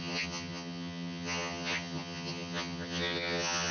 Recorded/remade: remade